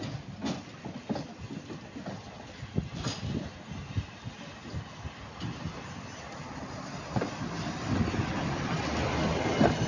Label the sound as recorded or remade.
recorded